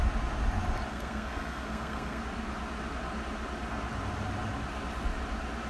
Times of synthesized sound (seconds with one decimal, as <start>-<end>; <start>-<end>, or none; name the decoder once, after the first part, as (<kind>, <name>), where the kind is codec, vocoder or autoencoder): 0.9-2.2 (codec, SNAC)